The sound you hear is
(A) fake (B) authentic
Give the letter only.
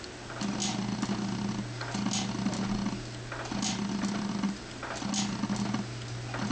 B